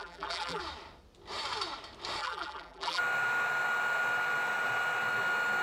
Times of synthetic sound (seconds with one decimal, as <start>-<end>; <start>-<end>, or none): 0.0-0.6; 2.2-3.0